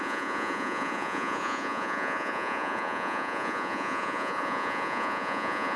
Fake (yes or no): yes